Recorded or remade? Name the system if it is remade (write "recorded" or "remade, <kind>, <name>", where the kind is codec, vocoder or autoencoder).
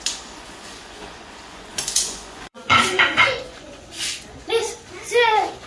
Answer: remade, vocoder, Vocos